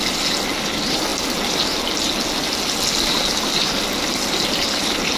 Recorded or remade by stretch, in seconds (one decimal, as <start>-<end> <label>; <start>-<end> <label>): 0.0-5.2 recorded